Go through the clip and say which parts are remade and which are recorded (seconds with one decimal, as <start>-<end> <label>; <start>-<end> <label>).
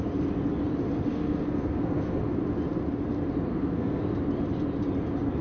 0.0-1.1 recorded; 1.1-2.2 remade; 2.2-3.5 recorded; 3.5-4.0 remade; 4.0-5.4 recorded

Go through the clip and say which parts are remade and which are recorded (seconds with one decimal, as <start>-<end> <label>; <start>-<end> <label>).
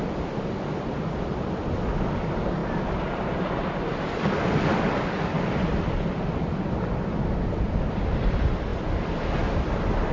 0.0-10.1 recorded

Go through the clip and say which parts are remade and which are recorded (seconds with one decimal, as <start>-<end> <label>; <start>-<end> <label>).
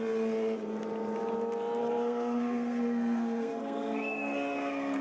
0.0-1.8 recorded; 1.8-5.0 remade